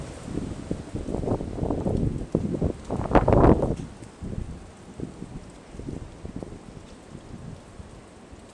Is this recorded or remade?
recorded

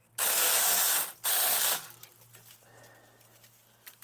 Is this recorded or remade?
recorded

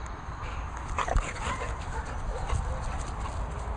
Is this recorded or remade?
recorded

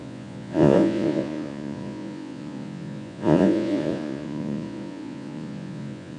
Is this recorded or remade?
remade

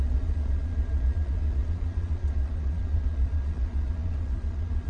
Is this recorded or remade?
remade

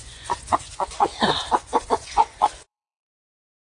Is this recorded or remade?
remade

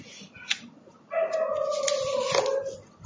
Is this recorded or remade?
recorded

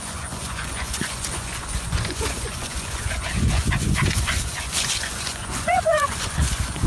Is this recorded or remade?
remade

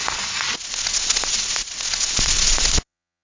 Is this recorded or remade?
remade